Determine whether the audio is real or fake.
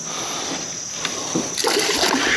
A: real